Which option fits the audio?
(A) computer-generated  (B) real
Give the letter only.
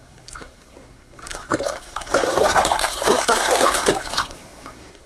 A